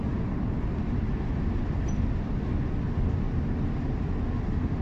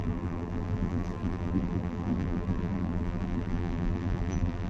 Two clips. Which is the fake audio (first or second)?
second